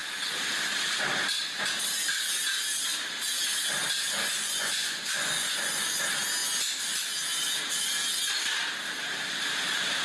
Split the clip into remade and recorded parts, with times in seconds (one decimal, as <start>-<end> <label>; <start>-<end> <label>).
0.0-4.2 recorded; 4.2-6.0 remade; 6.0-10.0 recorded